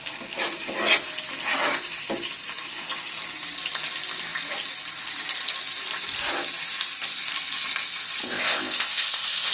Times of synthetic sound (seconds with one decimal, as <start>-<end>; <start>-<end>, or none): 8.2-9.5